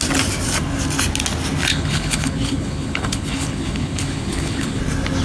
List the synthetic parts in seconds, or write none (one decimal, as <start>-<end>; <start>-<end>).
1.7-4.8